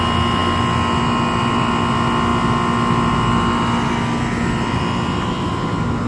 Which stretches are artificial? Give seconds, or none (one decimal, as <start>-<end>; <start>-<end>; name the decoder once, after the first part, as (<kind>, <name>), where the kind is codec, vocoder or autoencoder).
none